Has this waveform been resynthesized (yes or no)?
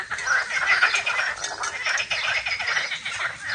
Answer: no